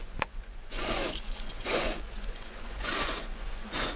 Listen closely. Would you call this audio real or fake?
fake